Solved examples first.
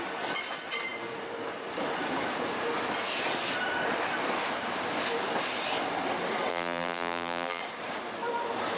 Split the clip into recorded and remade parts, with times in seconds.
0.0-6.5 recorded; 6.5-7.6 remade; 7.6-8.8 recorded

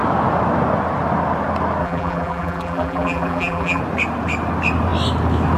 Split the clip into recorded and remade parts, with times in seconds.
0.0-1.8 recorded; 1.8-3.8 remade; 3.8-5.6 recorded